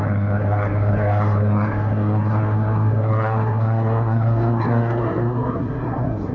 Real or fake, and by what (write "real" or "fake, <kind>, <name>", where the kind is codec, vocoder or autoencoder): fake, codec, SNAC